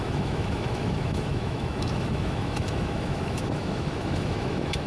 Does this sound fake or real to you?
fake